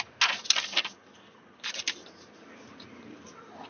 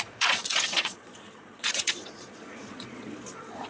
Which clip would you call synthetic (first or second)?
second